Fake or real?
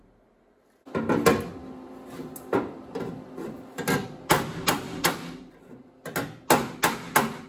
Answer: real